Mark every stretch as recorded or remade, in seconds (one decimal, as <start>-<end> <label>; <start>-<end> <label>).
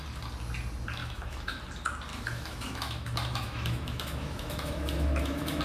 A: 0.0-1.0 recorded; 1.0-1.6 remade; 1.6-2.1 recorded; 2.1-5.6 remade